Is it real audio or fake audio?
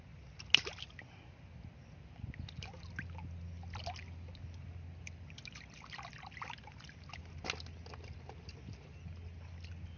real